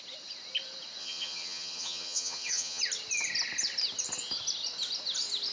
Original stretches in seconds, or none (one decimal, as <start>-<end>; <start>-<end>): 0.0-1.0; 2.8-5.5